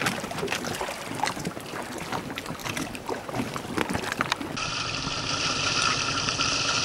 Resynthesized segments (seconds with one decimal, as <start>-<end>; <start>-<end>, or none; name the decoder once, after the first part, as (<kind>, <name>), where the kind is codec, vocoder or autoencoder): 2.6-6.3 (vocoder, BigVGAN v2)